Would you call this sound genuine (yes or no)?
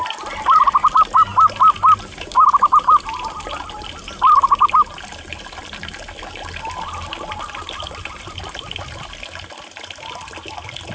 yes